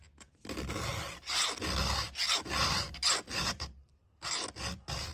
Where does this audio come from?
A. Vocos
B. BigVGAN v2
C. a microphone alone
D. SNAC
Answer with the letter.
C